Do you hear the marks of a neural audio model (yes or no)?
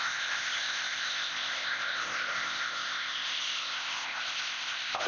yes